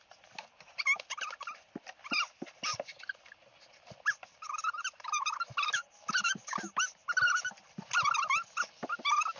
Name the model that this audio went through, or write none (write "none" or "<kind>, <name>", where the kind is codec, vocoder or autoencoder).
none